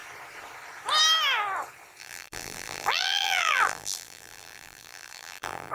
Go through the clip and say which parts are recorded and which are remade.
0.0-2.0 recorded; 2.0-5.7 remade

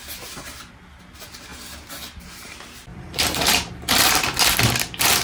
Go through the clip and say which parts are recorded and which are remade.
0.0-2.9 recorded; 2.9-4.1 remade; 4.1-5.2 recorded

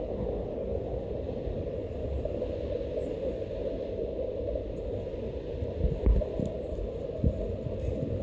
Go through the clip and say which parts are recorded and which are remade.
0.0-8.2 recorded

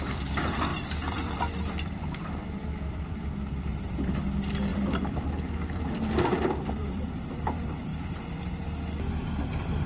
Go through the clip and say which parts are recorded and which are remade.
0.0-7.9 remade; 7.9-9.4 recorded; 9.4-9.9 remade

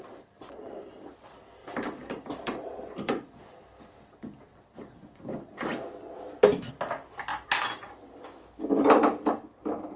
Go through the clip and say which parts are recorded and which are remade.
0.0-1.6 recorded; 1.6-6.7 remade; 6.7-10.0 recorded

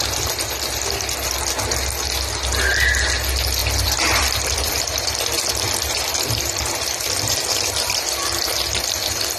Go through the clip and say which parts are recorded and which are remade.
0.0-3.6 recorded; 3.6-7.6 remade; 7.6-8.5 recorded; 8.5-9.4 remade

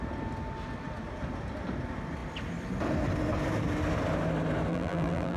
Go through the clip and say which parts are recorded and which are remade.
0.0-4.7 recorded; 4.7-5.4 remade